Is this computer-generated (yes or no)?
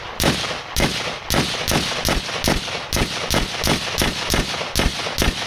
no